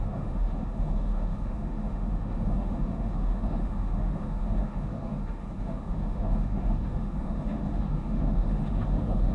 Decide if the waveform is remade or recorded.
remade